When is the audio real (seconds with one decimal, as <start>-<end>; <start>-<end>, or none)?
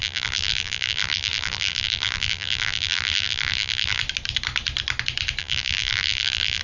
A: 4.0-5.4